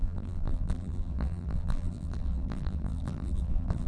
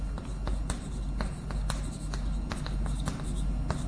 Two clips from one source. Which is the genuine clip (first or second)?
second